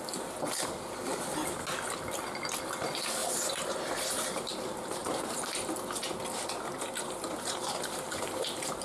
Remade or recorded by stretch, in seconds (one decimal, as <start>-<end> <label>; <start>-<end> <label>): 0.0-3.2 recorded; 3.2-4.5 remade; 4.5-5.0 recorded; 5.0-5.7 remade; 5.7-6.7 recorded; 6.7-7.7 remade; 7.7-8.8 recorded